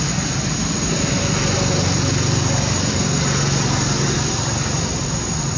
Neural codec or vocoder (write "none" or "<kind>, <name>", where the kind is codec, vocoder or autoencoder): none